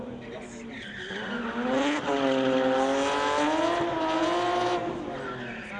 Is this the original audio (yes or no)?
yes